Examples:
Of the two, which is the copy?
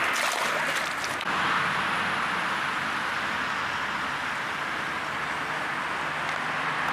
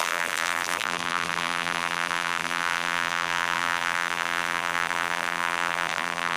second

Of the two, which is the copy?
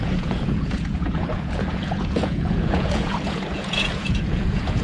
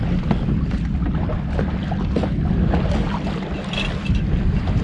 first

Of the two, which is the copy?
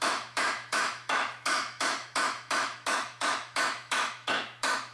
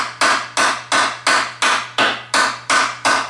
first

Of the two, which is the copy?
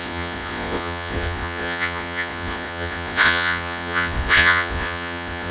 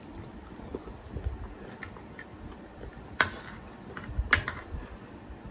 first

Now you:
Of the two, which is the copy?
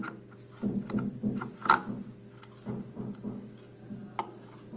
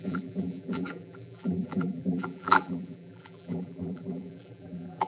second